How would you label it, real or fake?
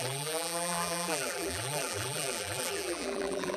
fake